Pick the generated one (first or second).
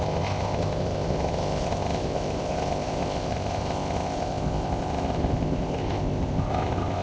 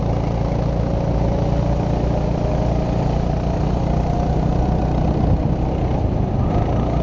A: first